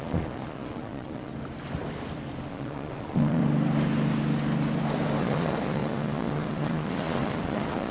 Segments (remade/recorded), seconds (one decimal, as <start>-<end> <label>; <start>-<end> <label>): 0.0-1.3 remade; 1.3-2.5 recorded; 2.5-3.4 remade; 3.4-5.2 recorded; 5.2-7.9 remade